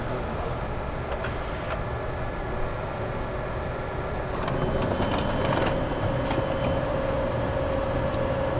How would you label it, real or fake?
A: real